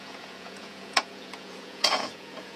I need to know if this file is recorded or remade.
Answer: remade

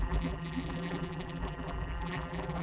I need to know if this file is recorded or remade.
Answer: remade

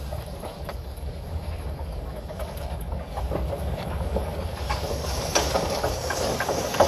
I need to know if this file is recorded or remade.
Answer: remade